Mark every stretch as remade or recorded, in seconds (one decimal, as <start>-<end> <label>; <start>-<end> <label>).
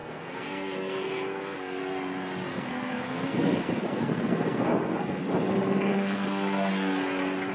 0.0-1.8 remade; 1.8-2.5 recorded; 2.5-5.2 remade; 5.2-5.9 recorded; 5.9-6.7 remade; 6.7-7.5 recorded